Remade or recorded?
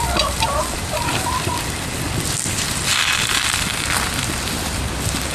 remade